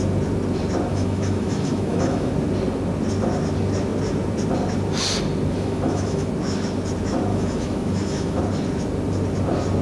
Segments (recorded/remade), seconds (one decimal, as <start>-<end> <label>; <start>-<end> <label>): 0.0-0.9 recorded; 0.9-2.3 remade; 2.3-5.5 recorded; 5.5-6.3 remade; 6.3-7.3 recorded; 7.3-8.4 remade; 8.4-9.8 recorded